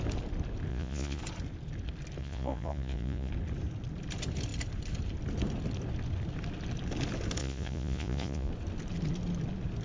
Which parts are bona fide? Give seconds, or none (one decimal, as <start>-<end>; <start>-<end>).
0.0-0.7; 1.2-2.2; 3.3-7.4; 8.5-9.8